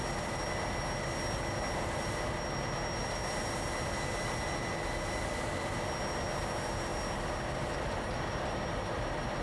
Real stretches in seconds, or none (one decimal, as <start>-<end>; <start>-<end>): 0.0-9.4